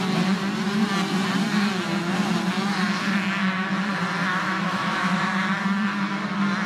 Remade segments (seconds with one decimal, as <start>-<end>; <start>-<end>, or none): 4.3-5.2